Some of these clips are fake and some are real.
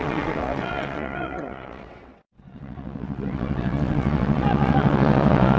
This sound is fake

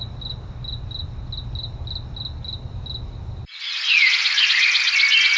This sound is real